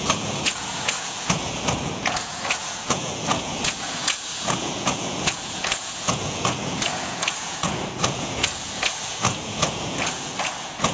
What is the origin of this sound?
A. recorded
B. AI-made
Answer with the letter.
B